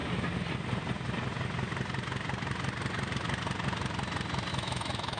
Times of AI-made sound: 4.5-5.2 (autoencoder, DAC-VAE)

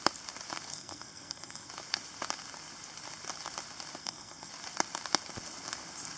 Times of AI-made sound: 0.7-1.7 (codec, SNAC); 4.0-4.5

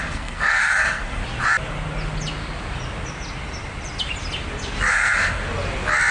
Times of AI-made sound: 0.0-1.2 (codec, SNAC); 4.9-5.4

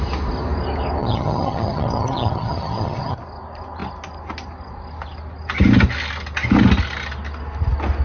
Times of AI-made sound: 1.0-3.2 (vocoder, HiFi-GAN)

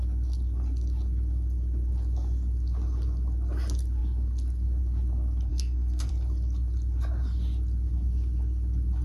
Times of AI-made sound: 5.5-6.1 (codec, SNAC)

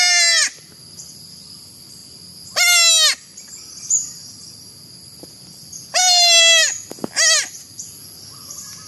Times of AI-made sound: none

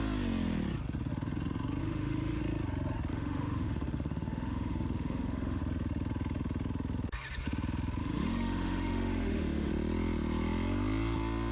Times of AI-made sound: 1.8-2.4 (autoencoder, DAC-VAE); 3.1-5.6; 8.0-9.7